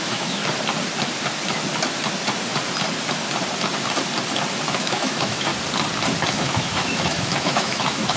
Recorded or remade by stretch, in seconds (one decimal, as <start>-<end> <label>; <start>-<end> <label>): 0.0-0.4 remade; 0.4-4.8 recorded; 4.8-5.5 remade; 5.5-6.3 recorded; 6.3-8.2 remade